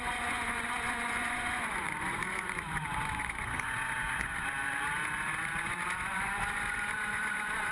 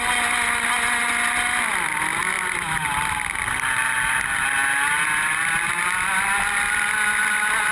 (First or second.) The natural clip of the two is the second